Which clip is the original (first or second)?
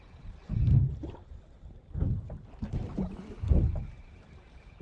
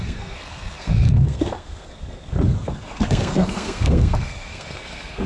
first